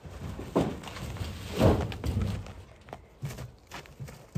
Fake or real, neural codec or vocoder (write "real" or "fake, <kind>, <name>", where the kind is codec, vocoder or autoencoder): real